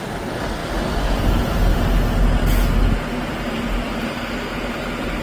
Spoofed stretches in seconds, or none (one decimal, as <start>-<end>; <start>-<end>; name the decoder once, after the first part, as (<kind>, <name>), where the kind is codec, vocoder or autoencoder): none

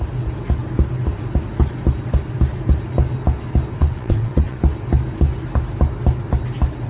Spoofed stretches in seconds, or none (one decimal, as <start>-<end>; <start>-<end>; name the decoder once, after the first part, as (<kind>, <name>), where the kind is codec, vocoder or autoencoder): 3.8-4.6 (vocoder, WaveNeXt)